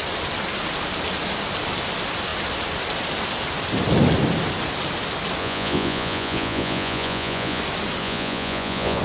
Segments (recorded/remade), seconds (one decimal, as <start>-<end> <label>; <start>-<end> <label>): 0.0-5.4 recorded; 5.4-7.6 remade; 7.6-8.0 recorded; 8.0-9.0 remade